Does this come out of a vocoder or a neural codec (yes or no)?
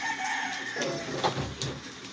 no